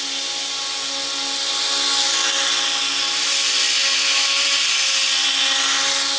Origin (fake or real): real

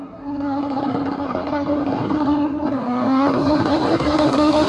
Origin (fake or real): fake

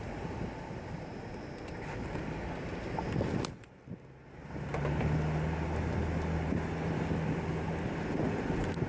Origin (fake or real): real